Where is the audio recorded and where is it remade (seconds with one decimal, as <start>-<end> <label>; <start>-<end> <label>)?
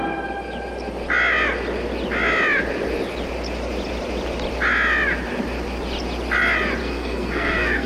0.0-6.8 recorded; 6.8-7.9 remade